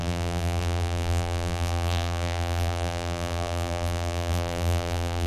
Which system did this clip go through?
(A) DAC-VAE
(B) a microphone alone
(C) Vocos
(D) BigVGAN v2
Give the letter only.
D